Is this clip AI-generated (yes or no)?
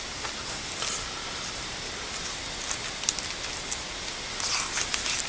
no